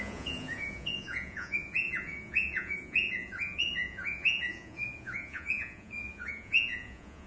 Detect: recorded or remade remade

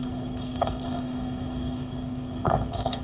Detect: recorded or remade remade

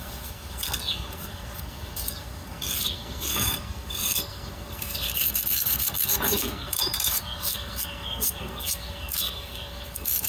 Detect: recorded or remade remade